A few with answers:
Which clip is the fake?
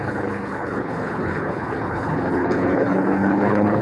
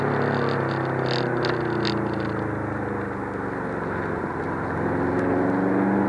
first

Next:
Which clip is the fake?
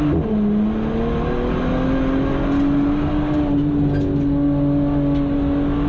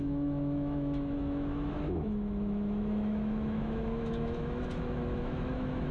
second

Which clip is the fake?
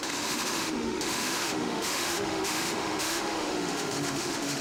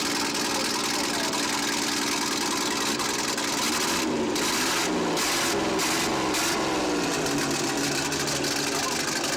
first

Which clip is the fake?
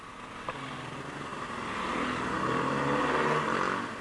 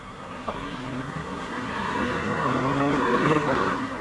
second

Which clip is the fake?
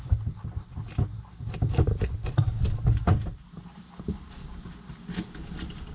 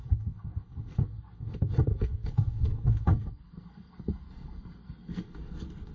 second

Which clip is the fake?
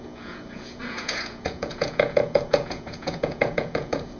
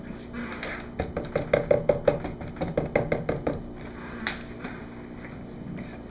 first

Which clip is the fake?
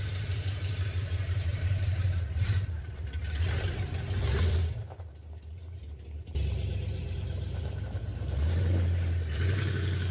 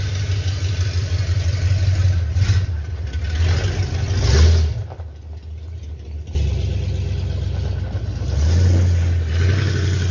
first